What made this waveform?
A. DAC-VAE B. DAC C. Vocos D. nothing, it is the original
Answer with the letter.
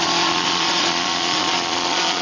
C